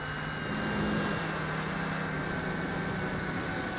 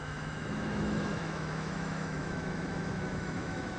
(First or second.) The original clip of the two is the first